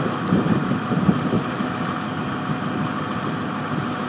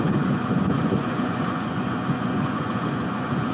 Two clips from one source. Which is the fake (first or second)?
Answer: second